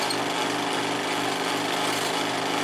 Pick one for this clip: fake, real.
real